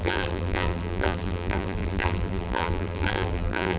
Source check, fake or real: fake